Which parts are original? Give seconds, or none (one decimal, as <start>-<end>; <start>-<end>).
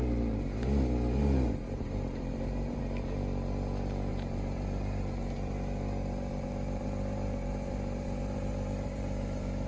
0.0-1.2; 2.8-4.1